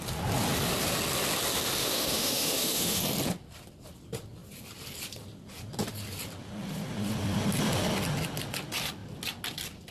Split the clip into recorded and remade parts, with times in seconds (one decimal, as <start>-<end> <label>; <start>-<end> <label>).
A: 0.0-1.8 recorded; 1.8-3.0 remade; 3.0-9.9 recorded